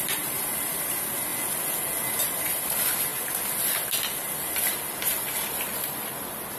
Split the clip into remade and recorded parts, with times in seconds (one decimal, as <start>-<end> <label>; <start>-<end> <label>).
0.0-1.3 remade; 1.3-2.2 recorded; 2.2-3.1 remade; 3.1-4.3 recorded; 4.3-6.6 remade